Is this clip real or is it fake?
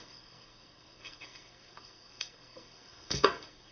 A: fake